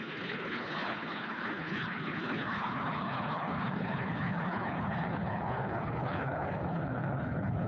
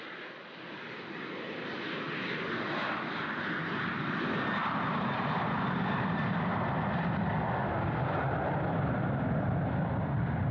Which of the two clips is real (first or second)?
second